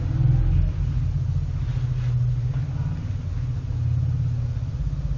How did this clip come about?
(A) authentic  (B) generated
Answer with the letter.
A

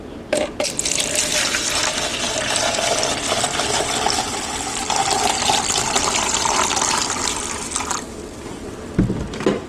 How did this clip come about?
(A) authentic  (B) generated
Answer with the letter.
B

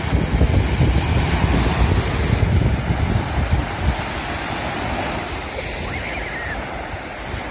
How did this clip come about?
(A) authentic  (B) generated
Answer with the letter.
A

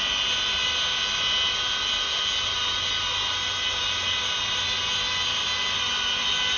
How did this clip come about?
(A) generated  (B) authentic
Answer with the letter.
B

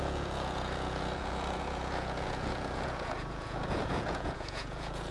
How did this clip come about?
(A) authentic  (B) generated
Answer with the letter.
B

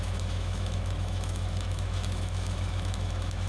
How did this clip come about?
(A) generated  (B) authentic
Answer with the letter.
A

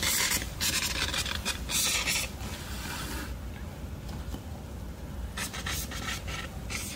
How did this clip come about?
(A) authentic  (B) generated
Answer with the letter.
A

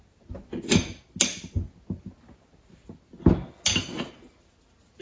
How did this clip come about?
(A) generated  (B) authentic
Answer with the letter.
B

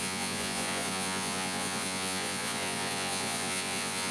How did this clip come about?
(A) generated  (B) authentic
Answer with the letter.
A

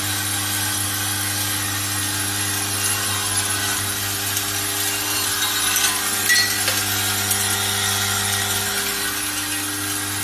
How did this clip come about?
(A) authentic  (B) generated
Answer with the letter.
A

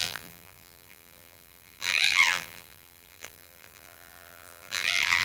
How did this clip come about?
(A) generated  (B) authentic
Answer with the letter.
A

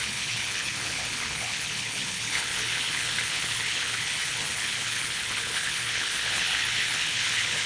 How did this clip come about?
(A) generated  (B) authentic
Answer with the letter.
A